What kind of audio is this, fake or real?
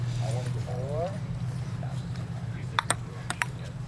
fake